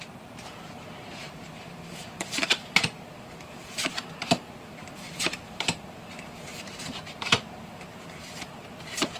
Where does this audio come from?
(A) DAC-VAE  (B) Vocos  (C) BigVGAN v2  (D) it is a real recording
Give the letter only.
C